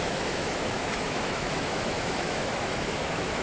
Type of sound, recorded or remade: remade